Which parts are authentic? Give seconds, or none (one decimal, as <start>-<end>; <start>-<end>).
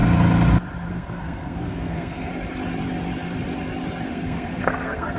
0.0-0.9; 2.3-4.1